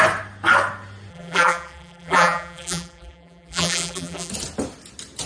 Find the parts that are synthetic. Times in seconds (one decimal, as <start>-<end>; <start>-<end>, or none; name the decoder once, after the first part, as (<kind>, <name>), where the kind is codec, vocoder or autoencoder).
1.1-4.3 (vocoder, BigVGAN v2)